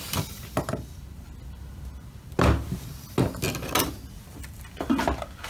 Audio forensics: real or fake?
real